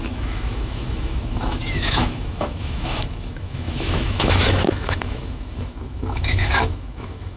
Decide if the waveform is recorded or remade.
remade